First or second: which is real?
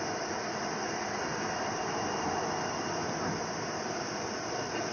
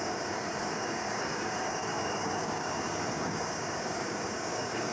first